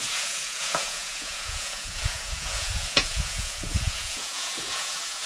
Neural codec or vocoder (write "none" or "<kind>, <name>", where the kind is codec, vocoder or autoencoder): vocoder, Vocos